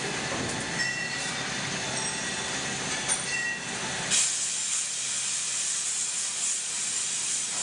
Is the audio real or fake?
real